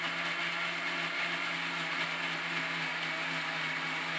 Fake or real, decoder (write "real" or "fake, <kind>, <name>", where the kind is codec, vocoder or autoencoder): real